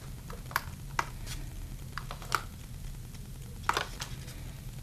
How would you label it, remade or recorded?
recorded